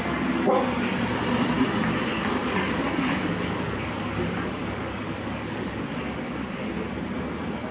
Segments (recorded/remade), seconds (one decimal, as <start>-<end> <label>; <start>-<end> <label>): 0.0-2.1 recorded; 2.1-6.7 remade; 6.7-7.7 recorded